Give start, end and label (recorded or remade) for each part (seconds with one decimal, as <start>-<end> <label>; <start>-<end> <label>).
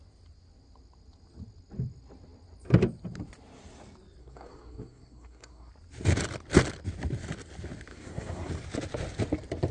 0.0-4.2 recorded; 4.2-5.7 remade; 5.7-7.9 recorded; 7.9-8.5 remade; 8.5-9.7 recorded